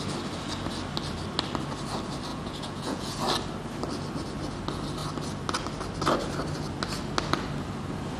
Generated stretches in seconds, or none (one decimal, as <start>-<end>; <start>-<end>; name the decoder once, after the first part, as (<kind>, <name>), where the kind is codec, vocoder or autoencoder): 2.3-3.1 (vocoder, Vocos)